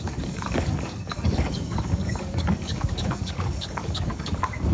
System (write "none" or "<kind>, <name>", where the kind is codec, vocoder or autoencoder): codec, DAC